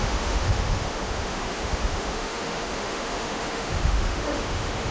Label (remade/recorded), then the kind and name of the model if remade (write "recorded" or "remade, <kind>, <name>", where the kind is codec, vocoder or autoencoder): remade, autoencoder, DAC-VAE